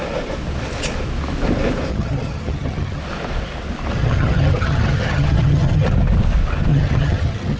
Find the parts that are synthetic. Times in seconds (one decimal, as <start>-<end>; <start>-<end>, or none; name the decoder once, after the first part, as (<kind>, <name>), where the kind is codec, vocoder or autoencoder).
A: 1.9-3.0 (vocoder, HiFi-GAN); 3.9-5.9; 6.7-7.6